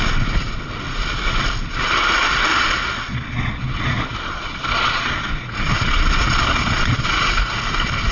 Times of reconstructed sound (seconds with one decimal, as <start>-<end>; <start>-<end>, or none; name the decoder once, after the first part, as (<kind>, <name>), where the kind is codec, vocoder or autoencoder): 2.5-7.4 (vocoder, Vocos)